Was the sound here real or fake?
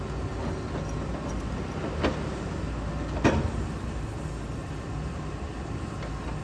real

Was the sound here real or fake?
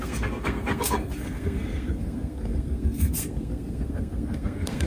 fake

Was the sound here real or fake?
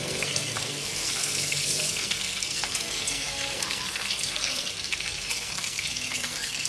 fake